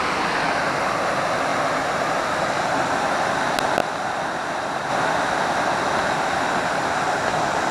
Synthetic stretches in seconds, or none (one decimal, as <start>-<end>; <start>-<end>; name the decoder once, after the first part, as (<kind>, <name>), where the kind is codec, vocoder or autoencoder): 1.5-2.4 (vocoder, BigVGAN v2)